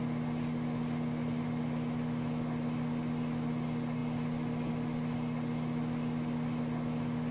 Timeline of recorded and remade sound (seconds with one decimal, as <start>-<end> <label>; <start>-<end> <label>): 0.0-7.3 recorded